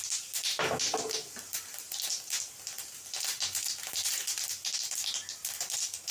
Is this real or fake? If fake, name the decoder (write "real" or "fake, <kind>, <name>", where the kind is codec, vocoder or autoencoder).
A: real